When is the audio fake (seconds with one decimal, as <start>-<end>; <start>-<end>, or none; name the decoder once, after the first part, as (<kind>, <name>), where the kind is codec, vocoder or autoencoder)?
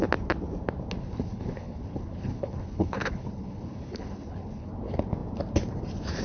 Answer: 1.0-4.7 (codec, HILCodec)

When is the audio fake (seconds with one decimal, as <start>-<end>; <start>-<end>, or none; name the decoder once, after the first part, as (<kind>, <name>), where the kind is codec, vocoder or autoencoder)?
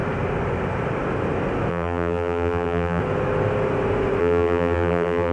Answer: 1.7-3.0 (vocoder, BigVGAN v2); 4.2-5.3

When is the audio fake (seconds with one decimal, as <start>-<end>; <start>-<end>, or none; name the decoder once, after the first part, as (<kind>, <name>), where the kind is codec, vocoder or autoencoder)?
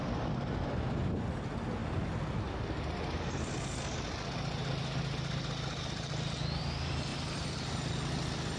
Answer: 7.1-7.9 (vocoder, BigVGAN v2)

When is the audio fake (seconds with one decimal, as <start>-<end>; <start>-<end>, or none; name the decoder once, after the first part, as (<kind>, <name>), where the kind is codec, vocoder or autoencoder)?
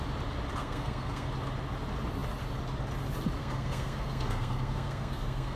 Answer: 0.6-1.3 (codec, SNAC); 3.4-5.6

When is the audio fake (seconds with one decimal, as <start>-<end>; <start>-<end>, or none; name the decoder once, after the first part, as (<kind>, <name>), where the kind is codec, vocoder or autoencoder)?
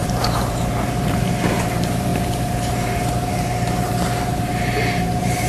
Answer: 0.0-5.5 (vocoder, BigVGAN v2)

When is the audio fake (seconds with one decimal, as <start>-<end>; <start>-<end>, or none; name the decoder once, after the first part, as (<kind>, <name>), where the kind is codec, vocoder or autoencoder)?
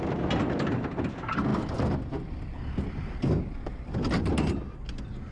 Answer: 1.5-4.2 (vocoder, BigVGAN v2)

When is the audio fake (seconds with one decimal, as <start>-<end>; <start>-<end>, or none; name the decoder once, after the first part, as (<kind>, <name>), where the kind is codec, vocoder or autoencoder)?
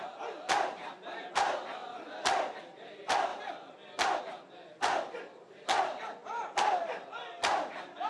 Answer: none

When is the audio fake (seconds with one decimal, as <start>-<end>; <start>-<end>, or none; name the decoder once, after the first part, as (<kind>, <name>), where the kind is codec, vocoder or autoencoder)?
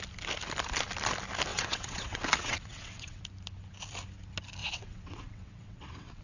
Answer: 1.5-3.2 (vocoder, WaveNeXt); 4.6-6.2